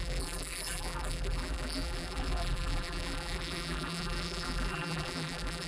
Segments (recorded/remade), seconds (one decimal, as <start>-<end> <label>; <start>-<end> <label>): 0.0-5.7 remade